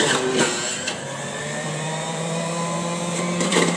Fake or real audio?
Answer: fake